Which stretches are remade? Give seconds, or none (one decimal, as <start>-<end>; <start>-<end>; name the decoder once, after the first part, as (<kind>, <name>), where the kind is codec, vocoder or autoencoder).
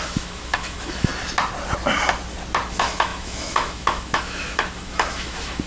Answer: 0.0-1.1 (autoencoder, DAC-VAE); 2.7-5.7